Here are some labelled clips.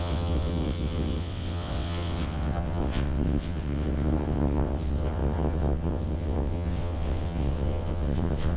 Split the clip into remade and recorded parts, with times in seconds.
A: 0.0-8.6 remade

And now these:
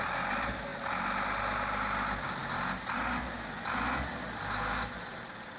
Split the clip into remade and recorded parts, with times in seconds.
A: 0.0-5.6 recorded

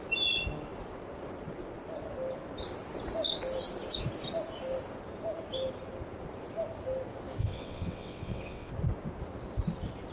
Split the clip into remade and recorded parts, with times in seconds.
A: 0.0-7.4 recorded; 7.4-8.7 remade; 8.7-10.1 recorded

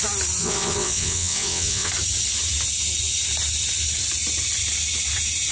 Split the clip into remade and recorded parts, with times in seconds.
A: 0.0-0.4 recorded; 0.4-1.9 remade; 1.9-5.5 recorded

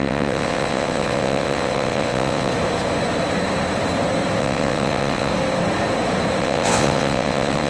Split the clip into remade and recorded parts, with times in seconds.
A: 0.0-2.5 remade; 2.5-4.4 recorded; 4.4-5.3 remade; 5.3-6.4 recorded; 6.4-7.7 remade